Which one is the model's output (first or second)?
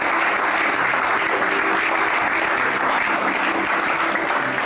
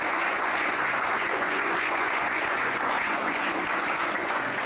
second